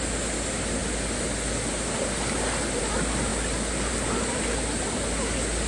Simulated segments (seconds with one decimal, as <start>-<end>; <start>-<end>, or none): none